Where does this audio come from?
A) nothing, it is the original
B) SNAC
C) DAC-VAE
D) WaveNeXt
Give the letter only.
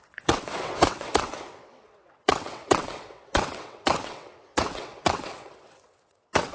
D